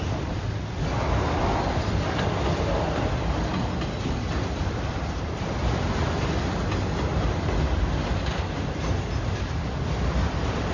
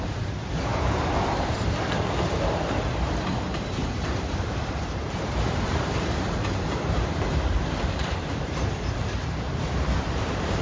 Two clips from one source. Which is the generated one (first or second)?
second